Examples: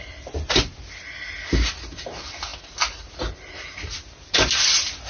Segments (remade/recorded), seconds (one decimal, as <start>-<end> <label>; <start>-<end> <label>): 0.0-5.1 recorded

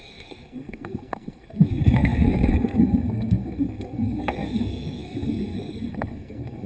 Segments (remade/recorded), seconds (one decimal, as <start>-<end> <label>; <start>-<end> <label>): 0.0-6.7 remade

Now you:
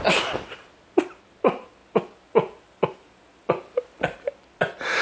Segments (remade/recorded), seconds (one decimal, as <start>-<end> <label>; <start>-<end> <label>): 0.0-5.0 recorded